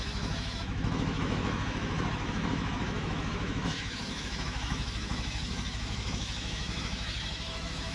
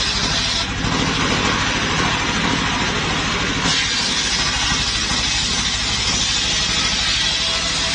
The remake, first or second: first